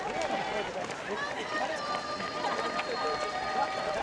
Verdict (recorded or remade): recorded